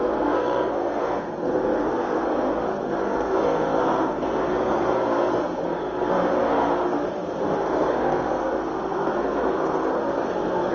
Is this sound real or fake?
fake